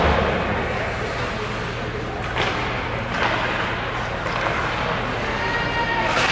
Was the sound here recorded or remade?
recorded